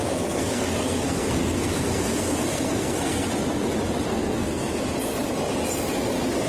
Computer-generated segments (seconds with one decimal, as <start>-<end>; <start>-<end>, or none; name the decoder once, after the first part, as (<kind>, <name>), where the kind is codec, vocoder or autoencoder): 0.0-3.3 (codec, SNAC); 4.1-4.7